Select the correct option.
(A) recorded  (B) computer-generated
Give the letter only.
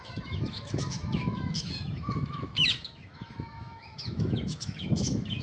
B